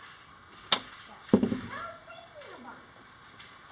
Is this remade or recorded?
recorded